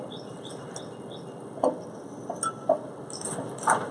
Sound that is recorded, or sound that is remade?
recorded